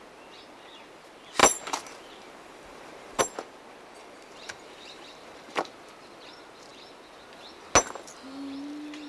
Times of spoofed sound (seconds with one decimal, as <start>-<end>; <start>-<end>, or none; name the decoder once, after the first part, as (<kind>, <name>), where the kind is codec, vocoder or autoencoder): 1.4-3.2 (vocoder, BigVGAN v2); 4.0-5.7

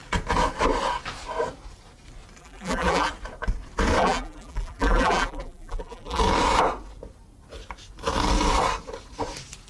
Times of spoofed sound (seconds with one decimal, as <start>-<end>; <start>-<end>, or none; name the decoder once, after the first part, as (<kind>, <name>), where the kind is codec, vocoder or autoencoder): 2.4-3.1 (vocoder, BigVGAN v2); 4.0-6.2